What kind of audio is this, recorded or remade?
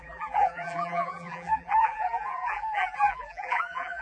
remade